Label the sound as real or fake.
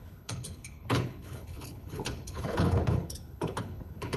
fake